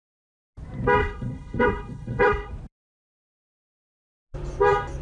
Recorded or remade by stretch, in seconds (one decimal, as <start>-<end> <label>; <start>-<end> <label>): 0.0-1.0 recorded; 1.0-2.5 remade; 2.5-5.0 recorded